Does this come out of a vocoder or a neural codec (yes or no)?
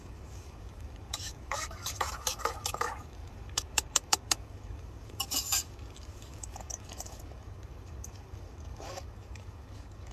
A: yes